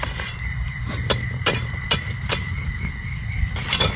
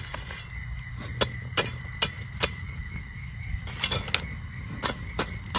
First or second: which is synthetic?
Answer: first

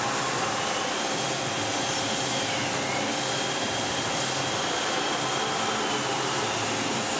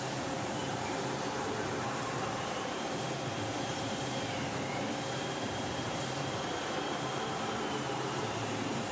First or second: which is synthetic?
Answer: second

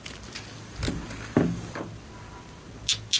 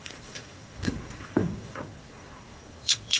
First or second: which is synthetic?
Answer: second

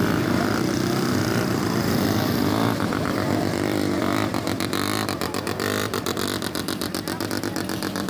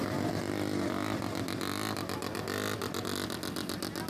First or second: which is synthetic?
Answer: first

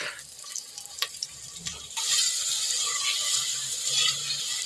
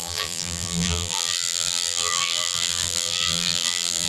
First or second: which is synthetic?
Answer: second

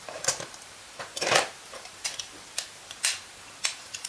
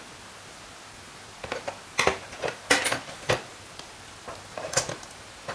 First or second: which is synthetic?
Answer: first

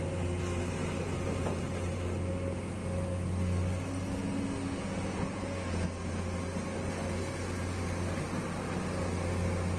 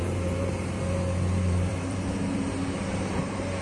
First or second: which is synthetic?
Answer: second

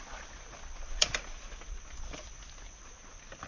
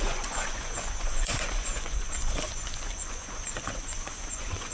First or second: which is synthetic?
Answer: second